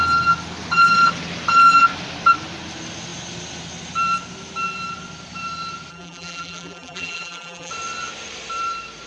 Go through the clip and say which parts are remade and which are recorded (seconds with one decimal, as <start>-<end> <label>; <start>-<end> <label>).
0.0-5.9 recorded; 5.9-7.7 remade; 7.7-9.1 recorded